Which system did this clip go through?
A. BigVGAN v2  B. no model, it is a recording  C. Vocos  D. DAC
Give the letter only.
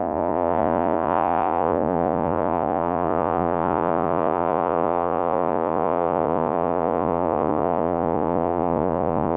C